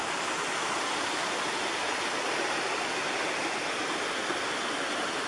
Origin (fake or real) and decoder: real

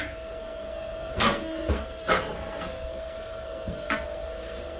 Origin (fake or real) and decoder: fake, codec, SNAC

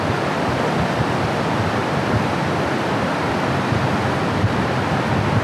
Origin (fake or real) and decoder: real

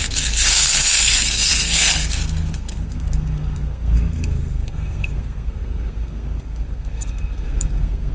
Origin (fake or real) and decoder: fake, codec, SNAC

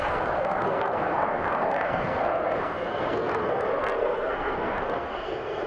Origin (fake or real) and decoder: fake, codec, SNAC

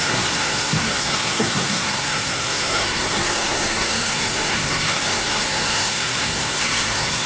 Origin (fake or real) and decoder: fake, codec, SNAC